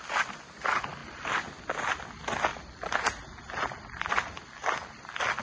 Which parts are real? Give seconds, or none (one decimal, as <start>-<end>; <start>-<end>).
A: 0.0-5.4